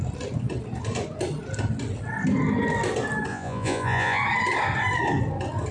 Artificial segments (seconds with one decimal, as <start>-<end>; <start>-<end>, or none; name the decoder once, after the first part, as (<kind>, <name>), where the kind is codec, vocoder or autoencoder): 3.3-4.2 (vocoder, Vocos)